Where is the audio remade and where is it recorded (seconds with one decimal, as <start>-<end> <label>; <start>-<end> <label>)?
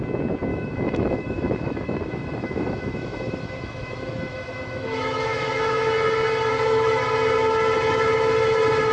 0.0-0.5 recorded; 0.5-5.6 remade; 5.6-6.5 recorded; 6.5-7.0 remade; 7.0-8.9 recorded